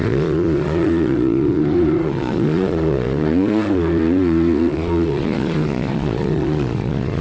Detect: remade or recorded remade